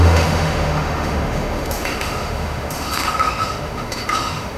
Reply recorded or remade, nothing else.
remade